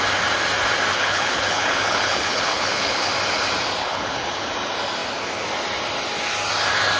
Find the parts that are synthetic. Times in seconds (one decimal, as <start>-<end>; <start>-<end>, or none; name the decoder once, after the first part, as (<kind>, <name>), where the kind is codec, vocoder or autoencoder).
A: 0.9-3.1 (codec, HILCodec); 3.8-4.5